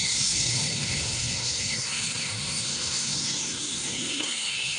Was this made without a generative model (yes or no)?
no